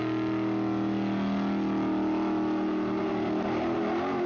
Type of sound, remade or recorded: recorded